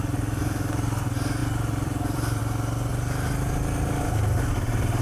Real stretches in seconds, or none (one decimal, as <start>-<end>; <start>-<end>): 0.0-1.4; 2.4-5.0